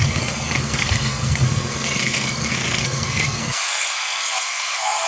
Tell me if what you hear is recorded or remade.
remade